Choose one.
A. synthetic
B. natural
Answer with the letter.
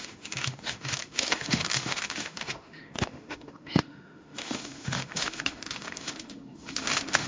A